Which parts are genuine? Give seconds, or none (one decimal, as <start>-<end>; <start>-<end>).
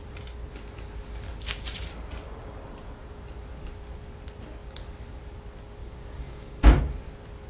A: 0.0-5.8; 6.8-7.5